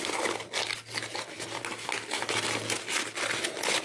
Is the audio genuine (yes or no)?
yes